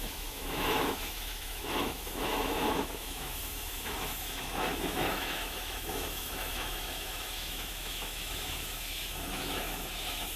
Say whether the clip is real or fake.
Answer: fake